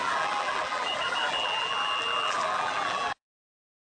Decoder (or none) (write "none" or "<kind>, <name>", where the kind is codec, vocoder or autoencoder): vocoder, BigVGAN v2